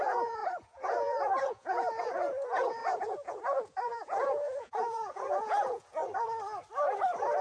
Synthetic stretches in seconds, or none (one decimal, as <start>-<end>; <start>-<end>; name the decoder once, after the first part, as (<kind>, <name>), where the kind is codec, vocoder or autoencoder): 0.0-6.0 (vocoder, Vocos)